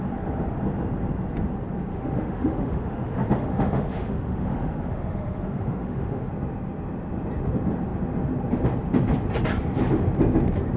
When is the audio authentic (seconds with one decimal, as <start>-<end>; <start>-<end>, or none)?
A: 0.0-1.9; 6.3-10.8